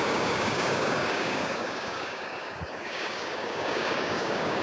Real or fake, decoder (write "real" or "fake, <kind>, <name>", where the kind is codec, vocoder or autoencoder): fake, codec, DAC